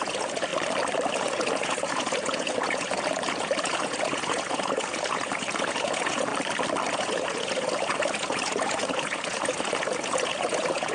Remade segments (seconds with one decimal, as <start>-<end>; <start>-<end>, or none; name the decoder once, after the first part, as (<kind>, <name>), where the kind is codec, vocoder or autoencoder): 0.0-0.5 (vocoder, Vocos); 1.1-6.3; 6.9-10.9